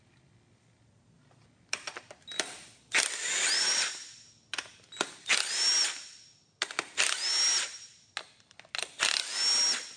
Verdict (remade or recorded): recorded